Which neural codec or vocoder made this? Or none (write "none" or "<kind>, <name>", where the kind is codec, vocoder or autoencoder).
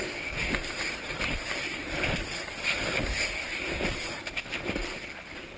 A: vocoder, BigVGAN v2